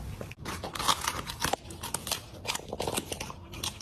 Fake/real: real